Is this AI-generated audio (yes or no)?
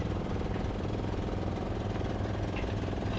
no